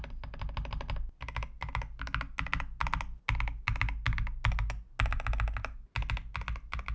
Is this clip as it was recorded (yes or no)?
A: yes